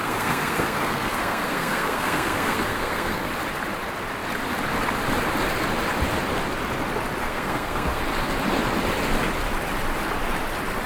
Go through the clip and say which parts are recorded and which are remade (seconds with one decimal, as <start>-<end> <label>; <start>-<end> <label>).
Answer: 0.0-3.3 remade; 3.3-7.2 recorded; 7.2-8.0 remade; 8.0-10.9 recorded